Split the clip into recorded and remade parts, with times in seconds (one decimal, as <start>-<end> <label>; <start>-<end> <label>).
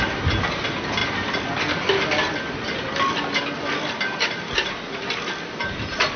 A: 0.0-6.2 recorded